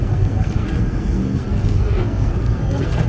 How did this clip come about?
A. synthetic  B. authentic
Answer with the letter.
A